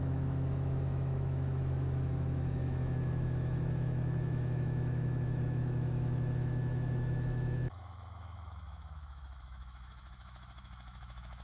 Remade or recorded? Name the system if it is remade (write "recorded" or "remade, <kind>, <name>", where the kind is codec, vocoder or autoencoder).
remade, autoencoder, DAC-VAE